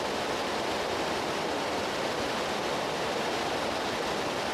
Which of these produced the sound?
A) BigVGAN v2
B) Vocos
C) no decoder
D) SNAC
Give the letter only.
C